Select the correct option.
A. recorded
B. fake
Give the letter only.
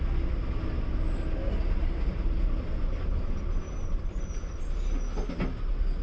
A